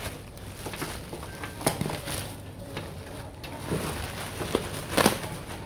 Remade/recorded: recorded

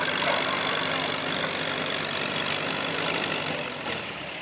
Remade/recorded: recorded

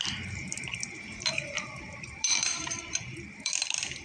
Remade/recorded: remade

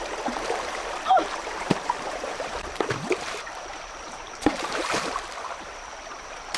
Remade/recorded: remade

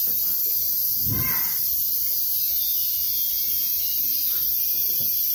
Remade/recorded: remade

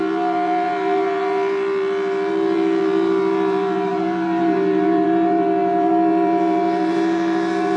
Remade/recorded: remade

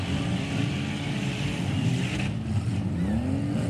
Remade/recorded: recorded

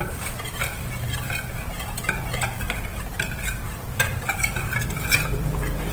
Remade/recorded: remade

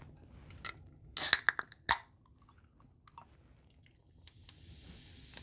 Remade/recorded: recorded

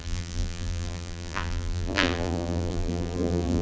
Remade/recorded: remade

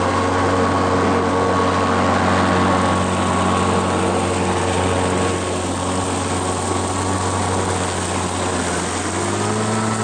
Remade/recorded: recorded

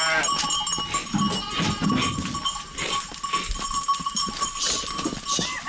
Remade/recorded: recorded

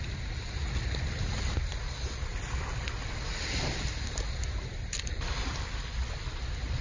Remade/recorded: recorded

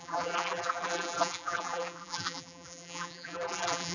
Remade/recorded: remade